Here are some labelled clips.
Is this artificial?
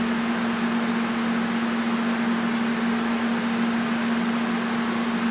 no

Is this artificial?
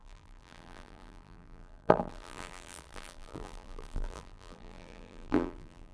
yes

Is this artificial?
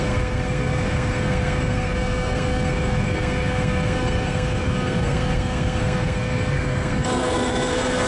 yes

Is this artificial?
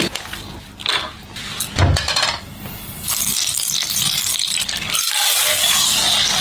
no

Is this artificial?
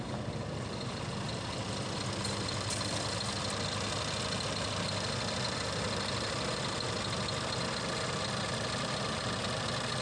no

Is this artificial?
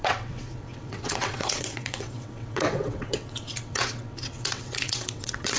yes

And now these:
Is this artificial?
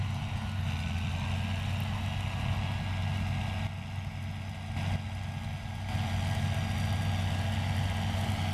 no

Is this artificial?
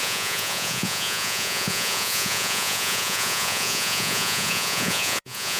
yes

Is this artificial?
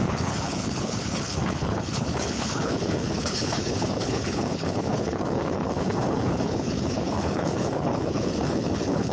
yes